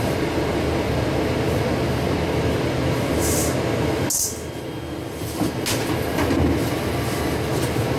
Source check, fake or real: real